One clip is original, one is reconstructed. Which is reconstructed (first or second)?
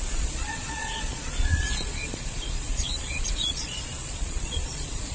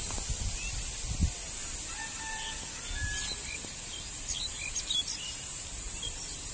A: first